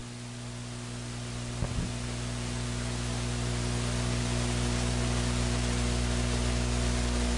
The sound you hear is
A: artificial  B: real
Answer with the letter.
B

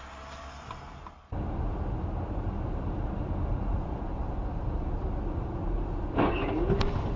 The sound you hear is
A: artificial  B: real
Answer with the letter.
B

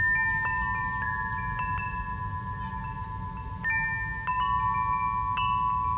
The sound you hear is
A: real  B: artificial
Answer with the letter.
A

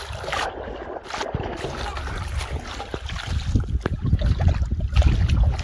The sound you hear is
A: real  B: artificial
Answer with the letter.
A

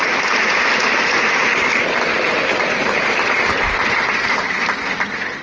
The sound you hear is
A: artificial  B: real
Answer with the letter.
B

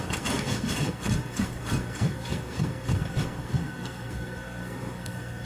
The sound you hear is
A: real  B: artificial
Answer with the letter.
B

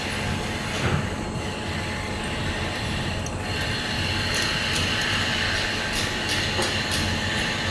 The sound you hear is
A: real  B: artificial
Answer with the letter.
A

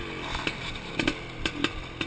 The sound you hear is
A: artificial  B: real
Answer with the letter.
B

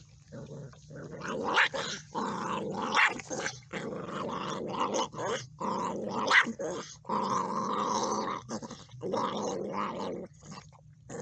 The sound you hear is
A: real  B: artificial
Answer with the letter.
A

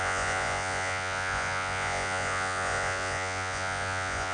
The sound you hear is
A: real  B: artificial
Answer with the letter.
B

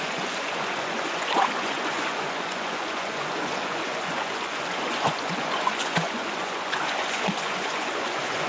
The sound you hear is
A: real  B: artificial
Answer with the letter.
B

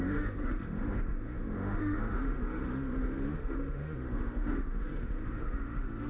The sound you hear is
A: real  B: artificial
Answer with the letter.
B